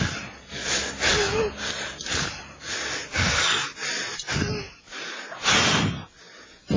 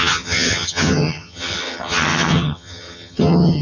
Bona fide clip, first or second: first